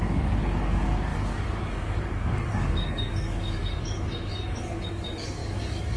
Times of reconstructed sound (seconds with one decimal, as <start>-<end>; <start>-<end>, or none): 0.0-6.0